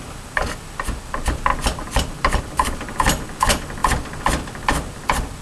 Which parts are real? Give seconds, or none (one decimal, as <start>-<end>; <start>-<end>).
0.0-1.5; 2.4-5.4